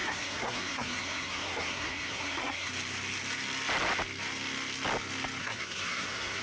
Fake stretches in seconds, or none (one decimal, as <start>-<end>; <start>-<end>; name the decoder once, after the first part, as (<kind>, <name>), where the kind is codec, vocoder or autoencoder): 0.0-2.7 (codec, SNAC); 5.4-6.4